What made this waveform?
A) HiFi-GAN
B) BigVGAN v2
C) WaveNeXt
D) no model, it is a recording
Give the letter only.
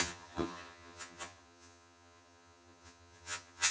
A